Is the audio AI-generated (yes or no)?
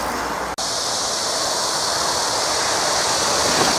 no